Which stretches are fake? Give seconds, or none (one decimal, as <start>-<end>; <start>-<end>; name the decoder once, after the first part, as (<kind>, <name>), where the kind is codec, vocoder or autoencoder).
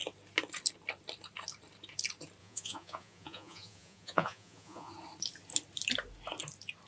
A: 2.4-4.9 (vocoder, Vocos)